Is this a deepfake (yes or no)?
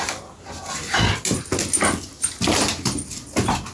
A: no